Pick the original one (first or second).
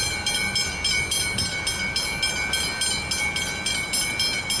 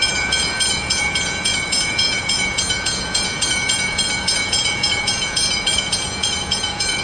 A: first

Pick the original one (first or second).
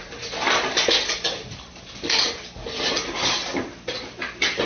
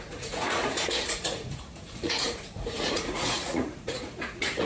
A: first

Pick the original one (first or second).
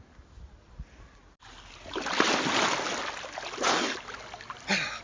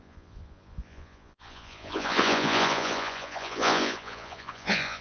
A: first